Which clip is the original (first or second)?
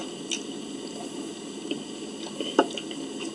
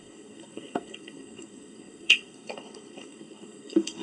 first